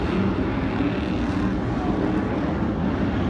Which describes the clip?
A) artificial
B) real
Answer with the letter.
B